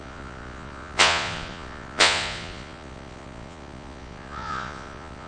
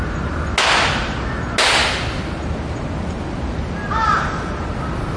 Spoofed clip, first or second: first